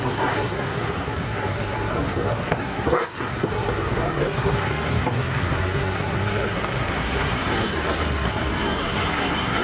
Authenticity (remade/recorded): remade